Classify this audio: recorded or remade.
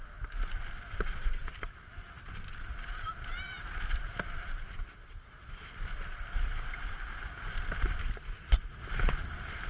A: recorded